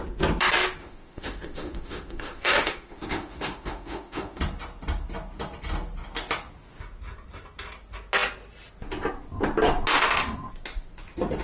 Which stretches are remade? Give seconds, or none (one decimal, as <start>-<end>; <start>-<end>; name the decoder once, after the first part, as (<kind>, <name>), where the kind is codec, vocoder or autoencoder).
0.8-4.4 (autoencoder, DAC-VAE)